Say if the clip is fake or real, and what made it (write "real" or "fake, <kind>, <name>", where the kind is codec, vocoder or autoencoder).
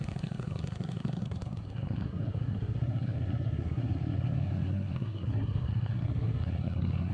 fake, codec, SNAC